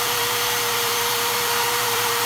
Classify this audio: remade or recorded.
remade